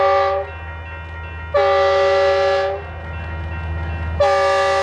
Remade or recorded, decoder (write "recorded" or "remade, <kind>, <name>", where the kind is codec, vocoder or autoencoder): recorded